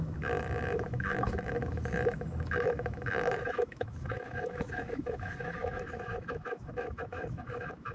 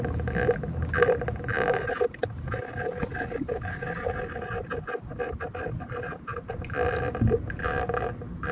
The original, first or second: second